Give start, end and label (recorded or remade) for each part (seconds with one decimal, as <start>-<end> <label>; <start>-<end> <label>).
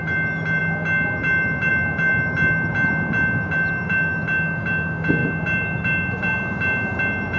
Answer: 0.0-7.4 recorded